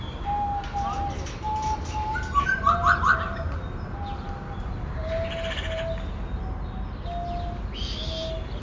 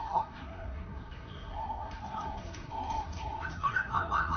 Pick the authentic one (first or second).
first